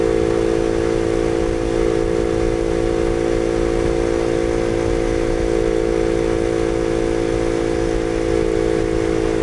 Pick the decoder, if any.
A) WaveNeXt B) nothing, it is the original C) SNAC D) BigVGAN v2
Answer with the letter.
B